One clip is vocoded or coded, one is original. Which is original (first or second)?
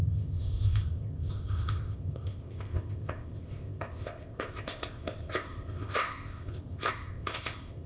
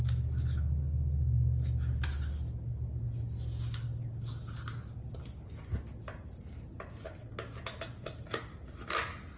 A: second